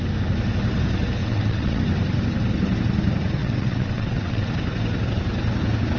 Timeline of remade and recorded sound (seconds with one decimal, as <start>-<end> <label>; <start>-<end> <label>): 0.0-1.2 recorded; 1.2-1.8 remade; 1.8-3.4 recorded; 3.4-4.5 remade; 4.5-6.0 recorded